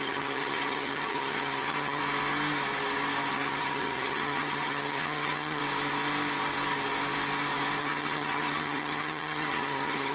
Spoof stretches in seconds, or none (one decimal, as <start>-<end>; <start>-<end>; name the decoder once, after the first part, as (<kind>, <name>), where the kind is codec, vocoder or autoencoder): 0.0-2.0 (vocoder, HiFi-GAN); 3.3-5.6; 7.8-10.1